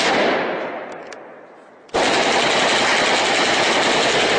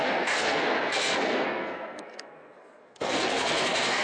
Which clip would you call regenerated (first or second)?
second